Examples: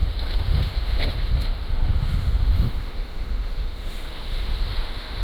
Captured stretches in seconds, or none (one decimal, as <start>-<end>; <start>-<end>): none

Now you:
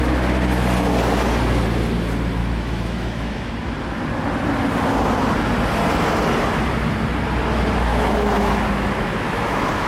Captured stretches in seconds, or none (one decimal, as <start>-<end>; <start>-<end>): 0.0-2.4; 3.5-7.9

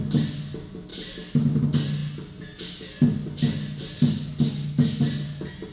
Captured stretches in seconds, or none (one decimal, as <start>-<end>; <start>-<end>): 0.0-5.7